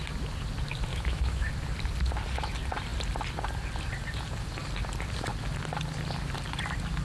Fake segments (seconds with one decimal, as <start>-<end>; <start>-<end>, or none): 0.9-1.5